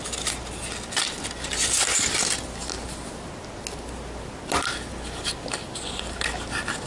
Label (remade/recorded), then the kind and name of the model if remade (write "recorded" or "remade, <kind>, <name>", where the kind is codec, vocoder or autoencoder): recorded